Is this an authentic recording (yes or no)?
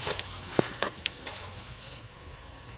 no